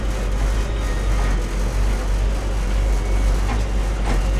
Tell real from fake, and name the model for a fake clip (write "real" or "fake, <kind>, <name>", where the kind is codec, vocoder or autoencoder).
real